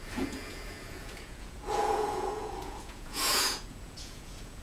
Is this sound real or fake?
fake